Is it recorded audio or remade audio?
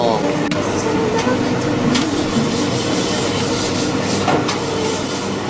recorded